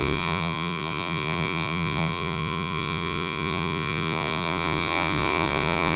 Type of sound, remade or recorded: remade